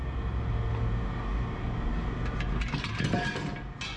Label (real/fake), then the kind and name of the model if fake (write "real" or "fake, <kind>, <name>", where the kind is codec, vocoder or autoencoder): real